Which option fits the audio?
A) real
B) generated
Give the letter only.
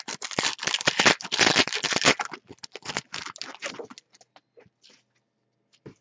A